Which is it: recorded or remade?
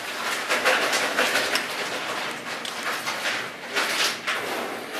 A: recorded